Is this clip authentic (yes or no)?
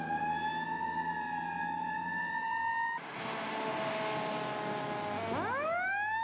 yes